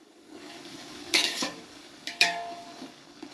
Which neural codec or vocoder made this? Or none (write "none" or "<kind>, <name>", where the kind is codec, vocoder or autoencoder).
codec, DAC